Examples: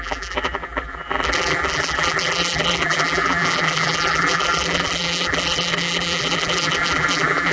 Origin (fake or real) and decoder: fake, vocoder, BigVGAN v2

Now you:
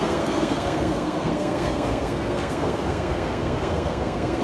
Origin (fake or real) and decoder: fake, codec, SNAC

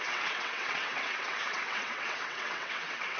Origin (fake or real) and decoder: fake, vocoder, WaveNeXt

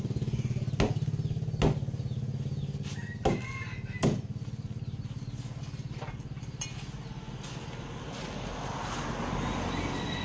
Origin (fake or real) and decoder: real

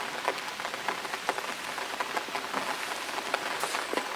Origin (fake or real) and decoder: real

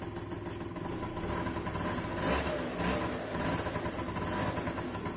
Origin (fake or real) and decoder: real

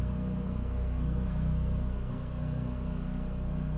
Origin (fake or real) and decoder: fake, codec, SNAC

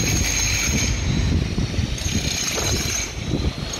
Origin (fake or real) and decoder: real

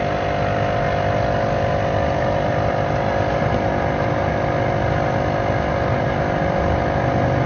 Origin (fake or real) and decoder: real